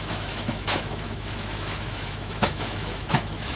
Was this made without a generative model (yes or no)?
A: no